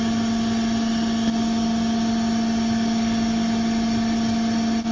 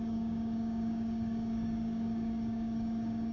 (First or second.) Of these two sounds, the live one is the first